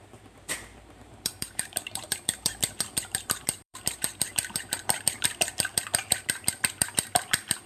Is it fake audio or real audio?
fake